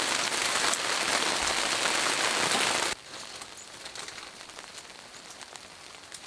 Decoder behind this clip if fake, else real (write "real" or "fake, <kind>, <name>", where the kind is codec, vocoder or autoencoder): real